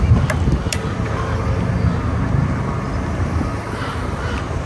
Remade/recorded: recorded